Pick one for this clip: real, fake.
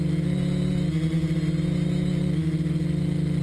real